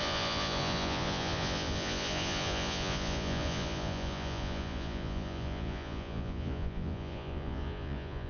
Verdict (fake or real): fake